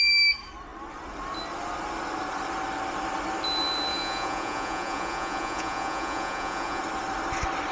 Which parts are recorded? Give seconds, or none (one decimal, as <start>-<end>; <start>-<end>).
0.0-3.9; 6.8-7.7